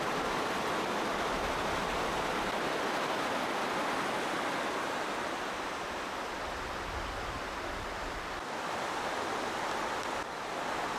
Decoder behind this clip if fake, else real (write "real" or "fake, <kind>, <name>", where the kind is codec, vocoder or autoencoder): real